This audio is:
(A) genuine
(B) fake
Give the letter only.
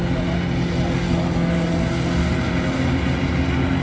A